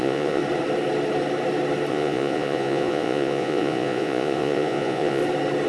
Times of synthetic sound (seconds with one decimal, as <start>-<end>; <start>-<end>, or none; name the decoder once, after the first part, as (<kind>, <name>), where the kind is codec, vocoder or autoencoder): 0.0-0.4 (vocoder, Vocos); 1.9-5.2